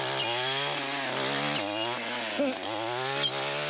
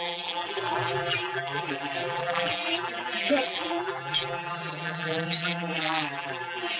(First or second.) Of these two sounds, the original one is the first